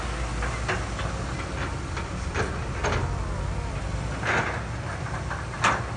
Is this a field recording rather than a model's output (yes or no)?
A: yes